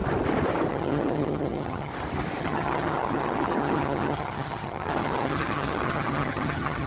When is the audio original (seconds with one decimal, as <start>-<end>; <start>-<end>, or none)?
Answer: 0.0-0.7; 1.9-2.4